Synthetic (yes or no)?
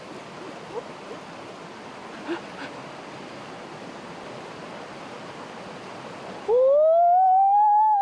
no